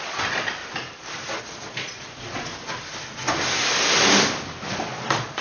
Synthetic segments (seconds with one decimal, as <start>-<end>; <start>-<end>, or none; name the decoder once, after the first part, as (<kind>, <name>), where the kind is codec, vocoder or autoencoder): 0.0-0.6 (vocoder, Vocos); 1.4-2.5; 4.7-5.4